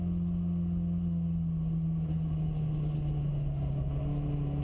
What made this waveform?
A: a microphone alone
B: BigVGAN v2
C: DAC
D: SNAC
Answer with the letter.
A